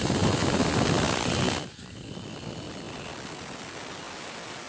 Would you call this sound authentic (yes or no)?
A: yes